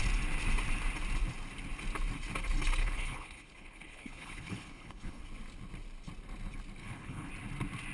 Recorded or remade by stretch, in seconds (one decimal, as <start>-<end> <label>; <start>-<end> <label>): 0.0-2.8 recorded; 2.8-5.2 remade; 5.2-6.8 recorded; 6.8-7.3 remade; 7.3-7.9 recorded